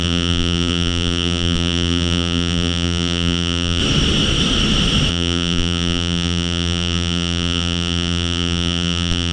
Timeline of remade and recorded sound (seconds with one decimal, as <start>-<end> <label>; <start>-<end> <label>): 0.0-3.8 remade; 3.8-5.1 recorded; 5.1-9.3 remade